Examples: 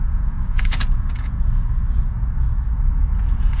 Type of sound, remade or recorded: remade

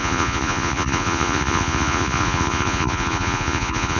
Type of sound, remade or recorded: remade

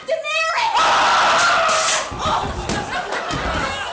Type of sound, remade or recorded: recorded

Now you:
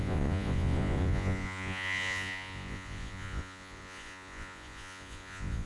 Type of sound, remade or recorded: remade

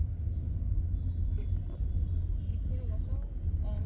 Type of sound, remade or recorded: recorded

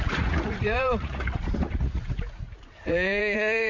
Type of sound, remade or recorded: remade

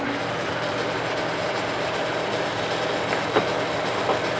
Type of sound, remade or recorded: recorded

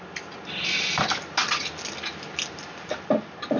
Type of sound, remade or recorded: recorded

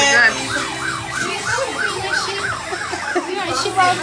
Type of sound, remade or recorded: recorded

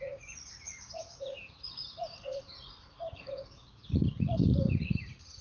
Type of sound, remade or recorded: remade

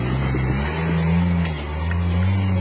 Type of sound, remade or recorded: recorded